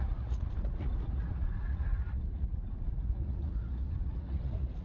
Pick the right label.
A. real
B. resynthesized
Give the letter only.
B